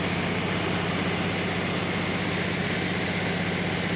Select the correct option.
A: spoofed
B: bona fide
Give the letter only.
B